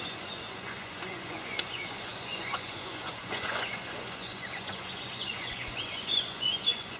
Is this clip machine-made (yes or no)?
yes